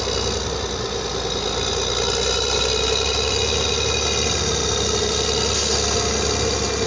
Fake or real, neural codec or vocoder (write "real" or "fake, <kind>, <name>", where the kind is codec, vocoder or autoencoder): real